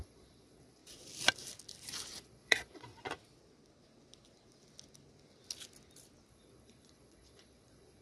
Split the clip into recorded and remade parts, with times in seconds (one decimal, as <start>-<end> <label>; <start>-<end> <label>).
0.0-0.8 remade; 0.8-2.2 recorded; 2.2-2.9 remade; 2.9-6.3 recorded; 6.3-8.0 remade